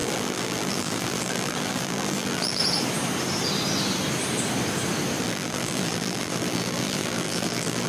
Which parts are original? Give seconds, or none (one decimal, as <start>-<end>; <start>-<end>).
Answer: 2.6-5.2